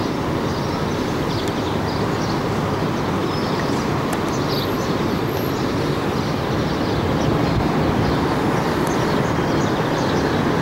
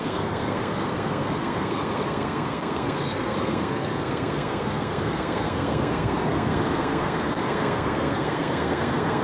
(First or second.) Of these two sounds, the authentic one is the first